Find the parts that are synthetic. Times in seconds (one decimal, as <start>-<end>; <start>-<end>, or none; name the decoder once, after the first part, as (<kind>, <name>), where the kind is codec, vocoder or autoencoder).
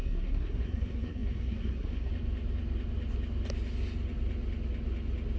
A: 0.0-2.1 (codec, SNAC)